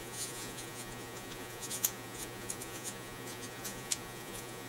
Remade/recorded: remade